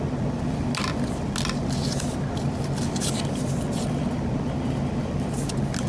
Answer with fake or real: real